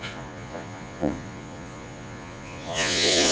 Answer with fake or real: fake